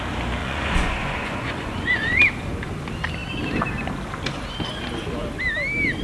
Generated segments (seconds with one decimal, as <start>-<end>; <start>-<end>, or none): 0.4-2.2